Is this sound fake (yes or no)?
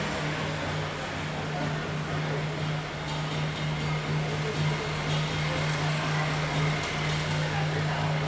no